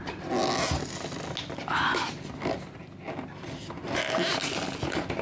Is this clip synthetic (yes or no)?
no